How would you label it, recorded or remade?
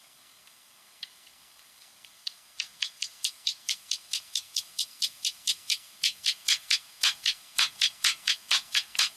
remade